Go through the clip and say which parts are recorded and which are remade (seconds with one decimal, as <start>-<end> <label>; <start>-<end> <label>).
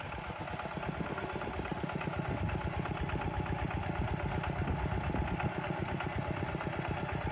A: 0.0-7.3 recorded